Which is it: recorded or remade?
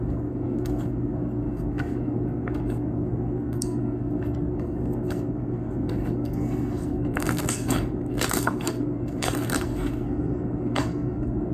remade